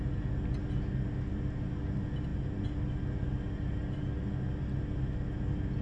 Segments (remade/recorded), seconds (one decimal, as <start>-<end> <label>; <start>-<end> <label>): 0.0-5.8 recorded

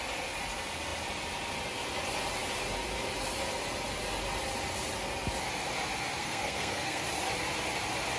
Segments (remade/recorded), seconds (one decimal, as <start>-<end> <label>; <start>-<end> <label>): 0.0-6.2 recorded; 6.2-7.0 remade; 7.0-8.2 recorded